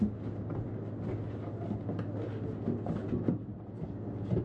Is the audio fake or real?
real